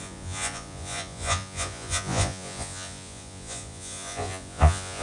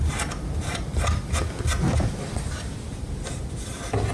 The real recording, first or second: second